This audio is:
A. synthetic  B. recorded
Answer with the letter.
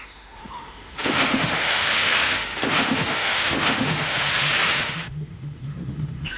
A